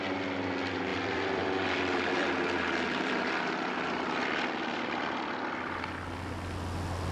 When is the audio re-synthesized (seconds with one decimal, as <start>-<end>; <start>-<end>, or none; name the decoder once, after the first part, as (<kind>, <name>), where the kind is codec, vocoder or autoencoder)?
0.9-3.1 (vocoder, BigVGAN v2)